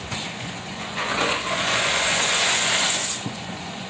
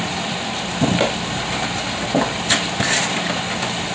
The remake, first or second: first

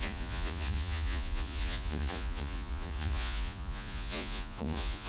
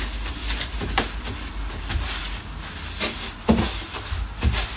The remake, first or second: first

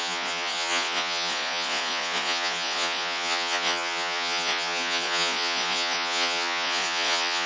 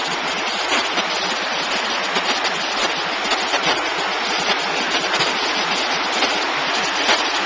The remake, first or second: first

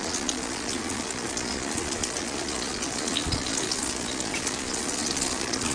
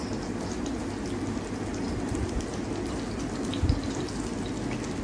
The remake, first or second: first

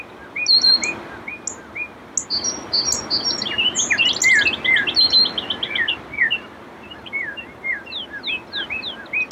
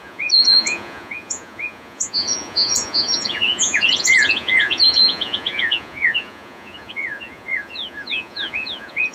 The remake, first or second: second